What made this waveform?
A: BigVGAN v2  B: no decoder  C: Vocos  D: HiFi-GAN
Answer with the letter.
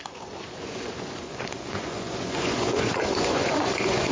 C